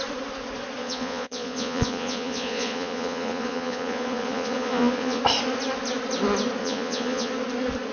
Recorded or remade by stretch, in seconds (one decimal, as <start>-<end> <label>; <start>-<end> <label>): 0.0-0.8 recorded; 0.8-5.2 remade; 5.2-6.6 recorded; 6.6-7.3 remade; 7.3-7.9 recorded